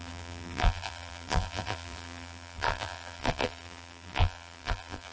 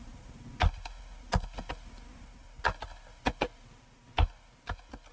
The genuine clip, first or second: second